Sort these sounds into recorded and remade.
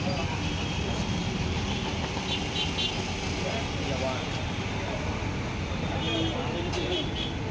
recorded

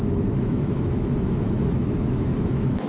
remade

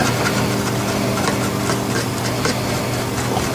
recorded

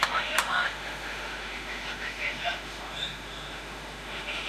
remade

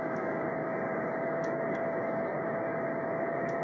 remade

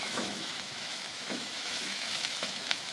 remade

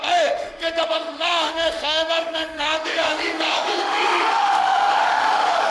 remade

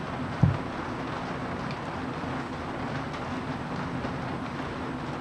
recorded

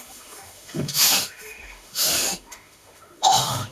remade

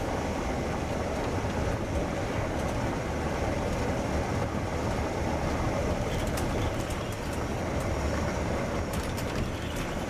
recorded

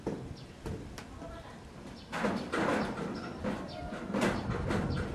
recorded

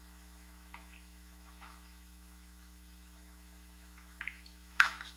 remade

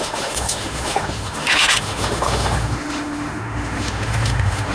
remade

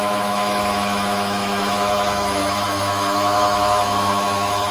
remade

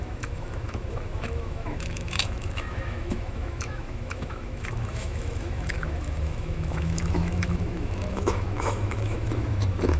remade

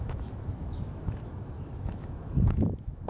remade